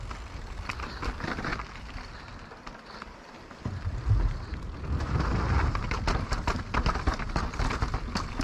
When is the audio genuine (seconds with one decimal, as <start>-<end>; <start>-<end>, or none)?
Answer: 0.0-8.4